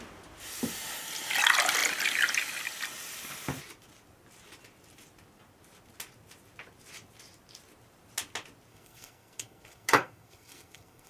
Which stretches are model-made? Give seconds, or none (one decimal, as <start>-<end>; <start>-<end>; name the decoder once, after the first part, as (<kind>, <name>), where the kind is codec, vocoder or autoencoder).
8.7-11.1 (codec, SNAC)